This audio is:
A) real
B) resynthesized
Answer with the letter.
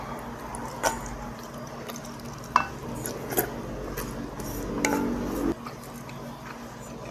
A